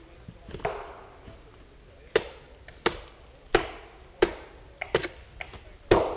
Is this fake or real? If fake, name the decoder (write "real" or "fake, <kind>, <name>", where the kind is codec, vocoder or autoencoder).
real